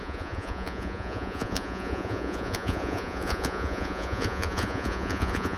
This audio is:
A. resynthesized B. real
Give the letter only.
A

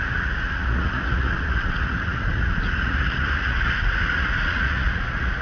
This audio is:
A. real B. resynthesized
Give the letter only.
B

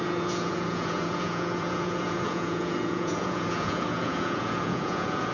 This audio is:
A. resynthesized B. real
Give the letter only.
A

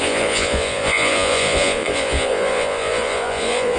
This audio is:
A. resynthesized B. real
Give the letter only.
A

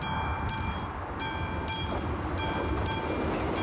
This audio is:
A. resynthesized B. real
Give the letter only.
B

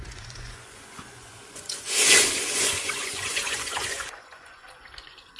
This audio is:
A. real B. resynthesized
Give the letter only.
B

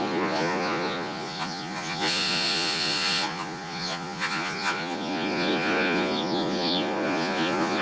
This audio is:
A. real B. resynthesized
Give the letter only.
B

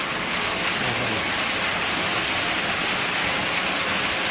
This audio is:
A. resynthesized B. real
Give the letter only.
B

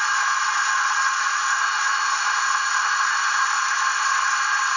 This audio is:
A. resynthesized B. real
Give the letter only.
B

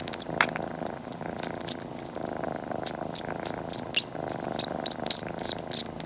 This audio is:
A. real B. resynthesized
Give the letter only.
A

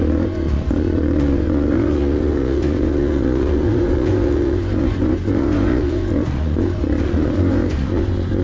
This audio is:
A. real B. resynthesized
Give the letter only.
B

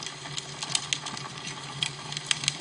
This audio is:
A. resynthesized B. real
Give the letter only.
B